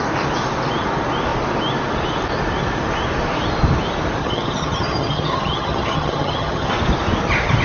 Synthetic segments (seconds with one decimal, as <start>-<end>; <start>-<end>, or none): 4.2-6.7